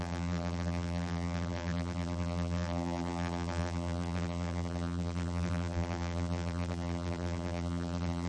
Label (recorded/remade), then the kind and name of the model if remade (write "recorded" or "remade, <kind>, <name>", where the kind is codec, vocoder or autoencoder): remade, vocoder, BigVGAN v2